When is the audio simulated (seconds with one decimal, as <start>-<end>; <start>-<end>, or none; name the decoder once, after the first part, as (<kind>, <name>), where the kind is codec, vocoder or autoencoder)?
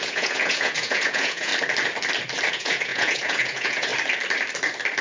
0.0-1.5 (vocoder, Vocos); 2.5-3.9